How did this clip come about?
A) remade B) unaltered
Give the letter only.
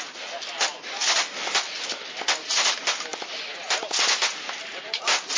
B